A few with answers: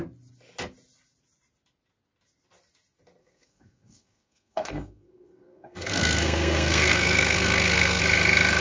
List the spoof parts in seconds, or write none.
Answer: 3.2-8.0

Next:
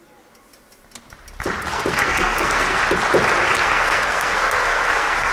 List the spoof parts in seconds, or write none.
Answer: 1.7-2.8; 3.6-5.3

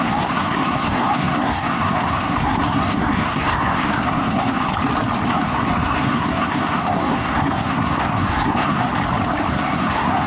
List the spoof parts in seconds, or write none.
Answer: 0.0-4.7; 5.3-8.9; 9.5-10.3

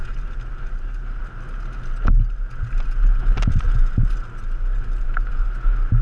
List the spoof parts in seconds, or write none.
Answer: none

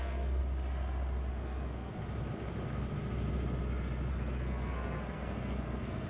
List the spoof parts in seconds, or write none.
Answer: 0.0-0.4; 1.3-2.0; 4.1-6.1

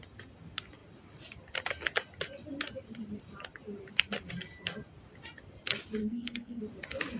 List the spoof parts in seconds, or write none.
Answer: 6.0-6.6

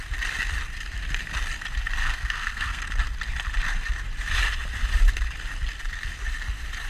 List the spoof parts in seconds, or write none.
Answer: 2.0-2.8